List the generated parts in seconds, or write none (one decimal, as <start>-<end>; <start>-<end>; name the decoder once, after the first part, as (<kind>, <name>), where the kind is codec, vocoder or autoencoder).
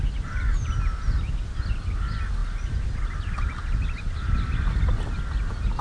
none